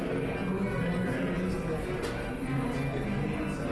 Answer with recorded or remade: recorded